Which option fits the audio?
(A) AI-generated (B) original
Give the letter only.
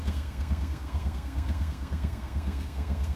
A